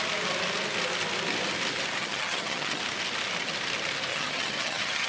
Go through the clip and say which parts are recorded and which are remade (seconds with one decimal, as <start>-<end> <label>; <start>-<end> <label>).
0.0-2.0 recorded; 2.0-2.8 remade; 2.8-4.1 recorded; 4.1-5.1 remade